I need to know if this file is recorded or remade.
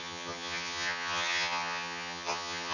remade